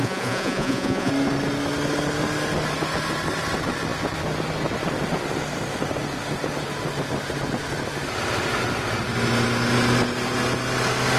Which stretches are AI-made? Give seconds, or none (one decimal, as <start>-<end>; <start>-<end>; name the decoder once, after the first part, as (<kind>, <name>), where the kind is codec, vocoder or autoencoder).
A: 0.0-1.1 (vocoder, Vocos)